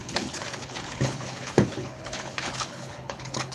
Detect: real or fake fake